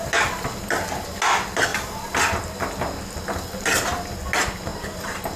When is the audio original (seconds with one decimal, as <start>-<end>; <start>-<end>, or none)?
0.0-1.7; 2.4-4.7